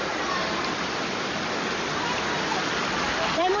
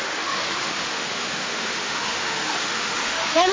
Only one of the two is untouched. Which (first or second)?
first